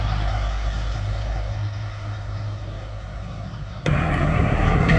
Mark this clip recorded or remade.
remade